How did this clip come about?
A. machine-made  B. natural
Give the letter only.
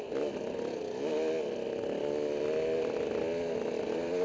B